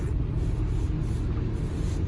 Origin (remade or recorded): recorded